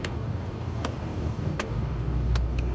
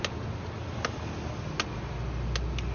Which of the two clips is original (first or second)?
second